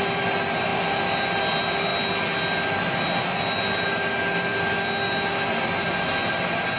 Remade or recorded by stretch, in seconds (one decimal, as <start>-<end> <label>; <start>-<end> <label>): 0.0-6.8 recorded